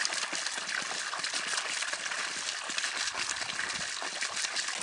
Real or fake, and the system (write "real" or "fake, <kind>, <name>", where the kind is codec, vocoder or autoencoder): real